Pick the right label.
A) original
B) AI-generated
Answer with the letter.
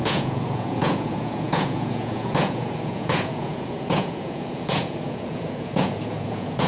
B